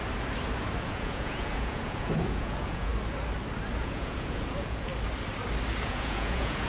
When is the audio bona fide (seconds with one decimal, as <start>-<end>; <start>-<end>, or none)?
0.0-0.8; 2.9-3.8; 4.9-5.8